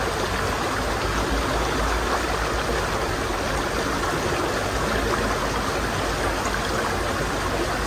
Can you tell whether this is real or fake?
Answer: real